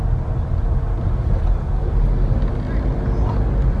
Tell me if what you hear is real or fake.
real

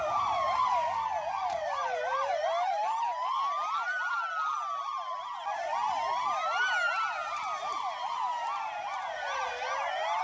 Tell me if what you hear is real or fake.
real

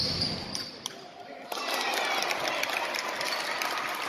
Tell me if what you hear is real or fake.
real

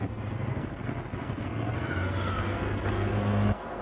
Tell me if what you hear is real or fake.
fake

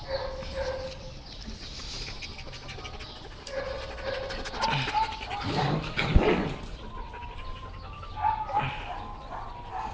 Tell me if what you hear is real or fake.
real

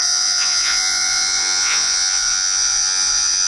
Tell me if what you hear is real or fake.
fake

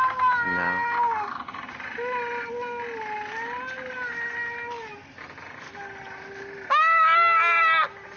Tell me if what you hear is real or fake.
real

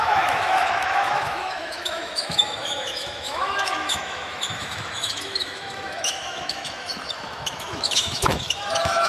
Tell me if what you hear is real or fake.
fake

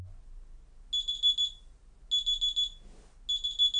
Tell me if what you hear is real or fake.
real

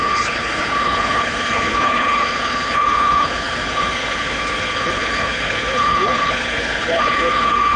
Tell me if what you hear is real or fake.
fake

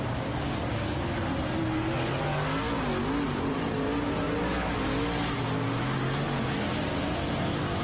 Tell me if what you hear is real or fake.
real